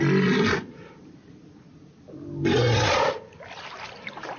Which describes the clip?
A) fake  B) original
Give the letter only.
B